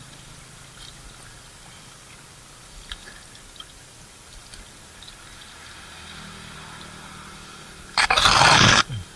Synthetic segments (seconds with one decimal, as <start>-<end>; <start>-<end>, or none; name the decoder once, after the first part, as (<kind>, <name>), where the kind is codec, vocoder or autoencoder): none